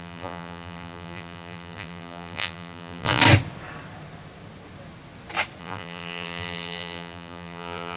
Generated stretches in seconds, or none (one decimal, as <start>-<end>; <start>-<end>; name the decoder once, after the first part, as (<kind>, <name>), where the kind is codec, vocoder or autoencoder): 0.0-3.2 (vocoder, BigVGAN v2); 5.6-8.0